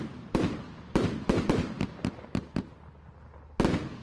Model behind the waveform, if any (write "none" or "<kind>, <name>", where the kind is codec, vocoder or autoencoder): none